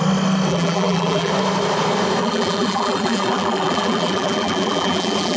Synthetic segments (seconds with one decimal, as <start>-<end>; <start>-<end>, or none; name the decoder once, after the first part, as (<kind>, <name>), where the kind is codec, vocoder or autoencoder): 0.5-1.3 (vocoder, BigVGAN v2); 2.2-5.4